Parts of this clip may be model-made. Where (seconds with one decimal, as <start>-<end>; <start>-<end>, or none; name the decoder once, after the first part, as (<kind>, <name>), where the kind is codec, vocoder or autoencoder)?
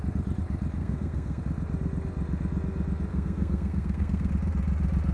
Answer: 0.8-1.4 (codec, SNAC); 3.1-4.3